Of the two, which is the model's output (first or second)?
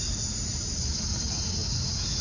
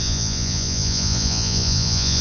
second